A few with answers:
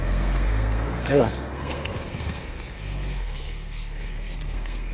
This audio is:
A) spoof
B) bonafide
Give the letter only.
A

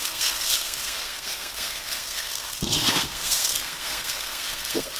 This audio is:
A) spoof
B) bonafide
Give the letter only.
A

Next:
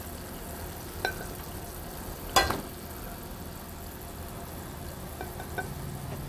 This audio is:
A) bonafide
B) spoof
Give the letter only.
A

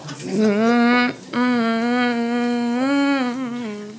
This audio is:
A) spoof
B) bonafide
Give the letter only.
B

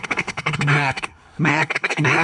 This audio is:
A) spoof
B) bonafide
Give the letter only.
A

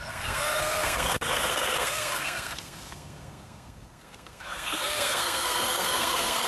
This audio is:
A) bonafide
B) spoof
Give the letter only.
B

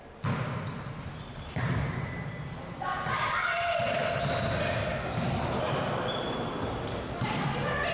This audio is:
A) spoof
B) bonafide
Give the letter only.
B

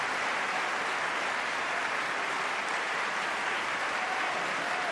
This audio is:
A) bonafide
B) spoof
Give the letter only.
A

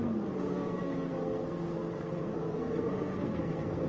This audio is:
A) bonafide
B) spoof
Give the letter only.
B